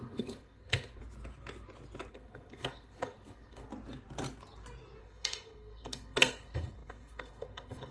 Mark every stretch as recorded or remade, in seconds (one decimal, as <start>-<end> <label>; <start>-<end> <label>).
0.0-1.0 remade; 1.0-2.1 recorded; 2.1-3.7 remade; 3.7-5.0 recorded; 5.0-7.9 remade